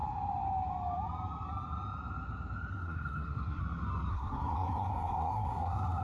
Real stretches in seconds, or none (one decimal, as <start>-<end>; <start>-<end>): 0.0-2.7; 3.6-4.1